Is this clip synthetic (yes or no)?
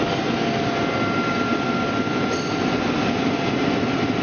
no